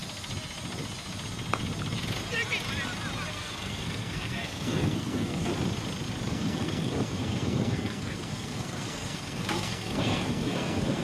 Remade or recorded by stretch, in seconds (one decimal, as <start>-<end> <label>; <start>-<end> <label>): 0.0-3.3 recorded; 3.3-5.5 remade; 5.5-6.3 recorded; 6.3-11.0 remade